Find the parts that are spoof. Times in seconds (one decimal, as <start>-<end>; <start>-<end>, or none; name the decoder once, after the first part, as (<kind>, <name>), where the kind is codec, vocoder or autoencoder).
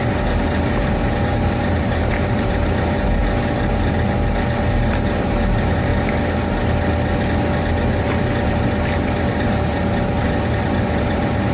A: 0.0-3.2 (vocoder, BigVGAN v2); 4.5-5.9; 8.0-11.5